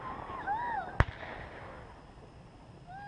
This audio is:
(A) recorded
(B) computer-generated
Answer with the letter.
A